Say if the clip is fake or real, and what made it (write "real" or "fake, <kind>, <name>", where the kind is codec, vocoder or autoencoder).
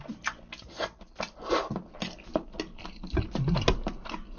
real